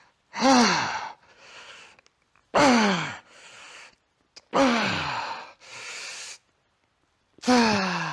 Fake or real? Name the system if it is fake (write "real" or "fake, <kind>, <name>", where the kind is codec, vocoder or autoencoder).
real